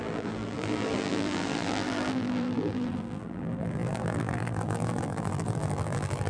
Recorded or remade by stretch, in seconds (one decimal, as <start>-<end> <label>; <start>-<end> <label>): 0.0-6.3 remade